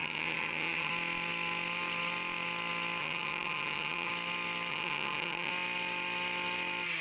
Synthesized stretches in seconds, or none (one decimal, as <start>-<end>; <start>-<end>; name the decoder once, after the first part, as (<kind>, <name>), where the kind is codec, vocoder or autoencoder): 0.0-0.9 (vocoder, HiFi-GAN); 3.0-4.1; 4.7-5.5